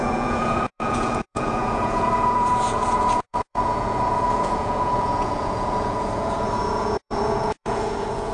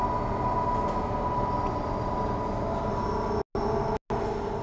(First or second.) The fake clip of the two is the first